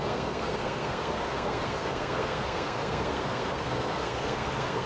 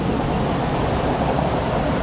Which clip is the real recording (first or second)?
second